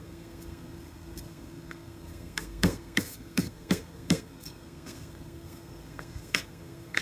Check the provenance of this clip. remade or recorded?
remade